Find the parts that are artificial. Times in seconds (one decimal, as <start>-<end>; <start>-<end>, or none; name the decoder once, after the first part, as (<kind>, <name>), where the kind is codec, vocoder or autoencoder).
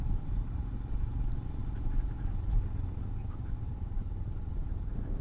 none